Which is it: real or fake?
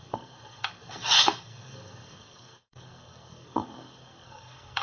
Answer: fake